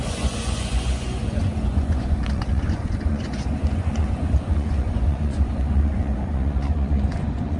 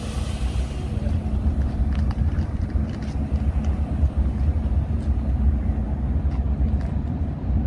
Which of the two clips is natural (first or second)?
second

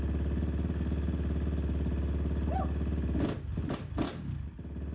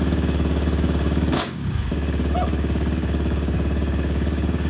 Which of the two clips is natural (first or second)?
first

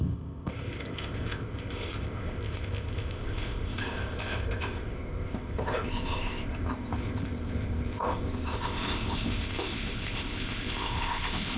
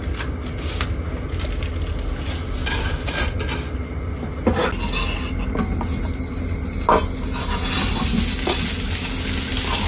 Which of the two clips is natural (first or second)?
second